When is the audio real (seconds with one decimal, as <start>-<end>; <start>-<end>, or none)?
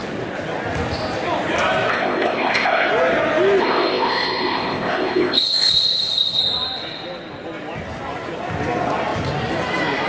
0.0-1.9; 2.9-3.6; 6.4-10.1